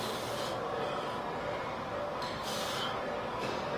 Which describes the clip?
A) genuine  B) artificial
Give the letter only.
A